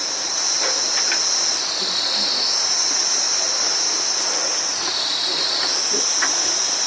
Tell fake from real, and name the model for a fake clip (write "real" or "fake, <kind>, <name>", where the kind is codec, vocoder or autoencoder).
real